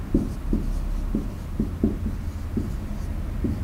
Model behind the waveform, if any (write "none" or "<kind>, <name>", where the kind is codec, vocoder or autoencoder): none